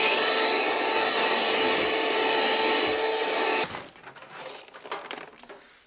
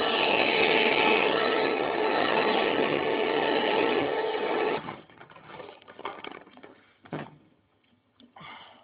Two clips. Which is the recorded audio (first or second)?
first